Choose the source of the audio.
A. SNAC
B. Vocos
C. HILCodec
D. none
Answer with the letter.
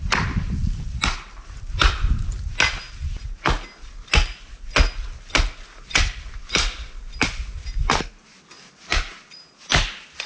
D